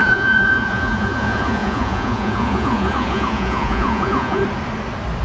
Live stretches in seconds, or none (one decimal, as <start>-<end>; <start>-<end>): 4.4-5.2